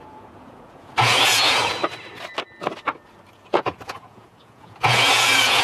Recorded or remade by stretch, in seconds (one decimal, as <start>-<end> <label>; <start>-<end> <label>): 0.0-1.8 remade; 1.8-3.3 recorded; 3.3-5.6 remade